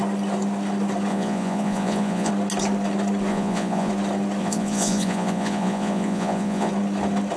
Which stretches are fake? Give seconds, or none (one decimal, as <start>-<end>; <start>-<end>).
1.1-2.3; 3.3-3.9; 4.4-6.7